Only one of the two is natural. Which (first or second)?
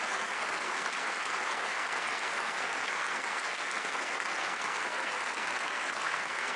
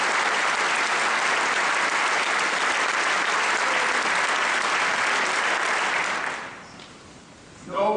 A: second